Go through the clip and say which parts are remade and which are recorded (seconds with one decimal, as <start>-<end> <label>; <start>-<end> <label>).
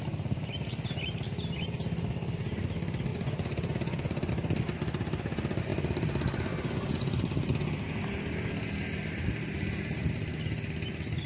0.0-3.1 recorded; 3.1-4.3 remade; 4.3-11.3 recorded